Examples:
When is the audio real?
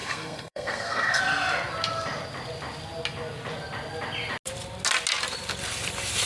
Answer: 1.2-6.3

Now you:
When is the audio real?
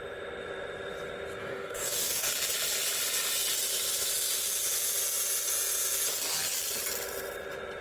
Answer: 0.0-1.4; 2.3-7.8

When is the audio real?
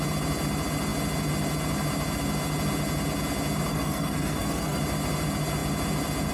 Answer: 0.0-3.7; 4.8-6.3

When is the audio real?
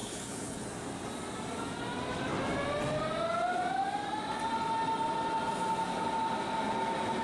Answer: 0.7-7.2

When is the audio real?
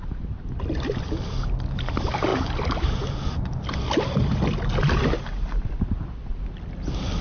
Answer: 0.0-7.2